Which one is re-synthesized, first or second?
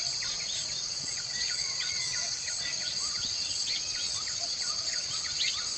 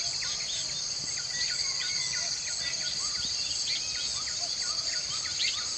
first